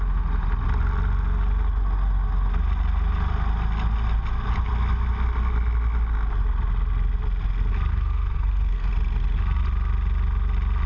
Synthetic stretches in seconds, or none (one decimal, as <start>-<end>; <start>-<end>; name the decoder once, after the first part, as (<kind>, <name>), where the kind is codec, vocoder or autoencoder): 7.9-8.9 (codec, SNAC)

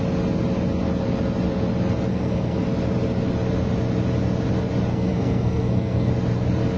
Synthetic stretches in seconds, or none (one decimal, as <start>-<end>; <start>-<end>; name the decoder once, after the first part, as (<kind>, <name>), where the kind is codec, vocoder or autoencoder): 2.1-2.6 (codec, SNAC); 4.9-6.1

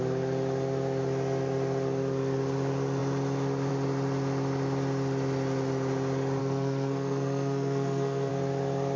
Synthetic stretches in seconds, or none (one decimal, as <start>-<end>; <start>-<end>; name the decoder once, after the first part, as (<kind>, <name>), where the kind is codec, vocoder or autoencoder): 6.4-8.3 (codec, SNAC)

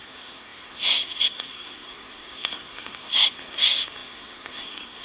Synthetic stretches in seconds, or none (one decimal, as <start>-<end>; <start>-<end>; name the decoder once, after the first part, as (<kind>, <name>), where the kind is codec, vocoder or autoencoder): 0.0-5.0 (codec, SNAC)